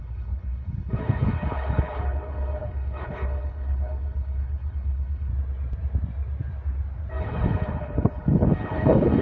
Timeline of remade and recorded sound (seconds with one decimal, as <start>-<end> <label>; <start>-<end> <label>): 0.0-5.3 remade; 5.3-7.2 recorded; 7.2-9.2 remade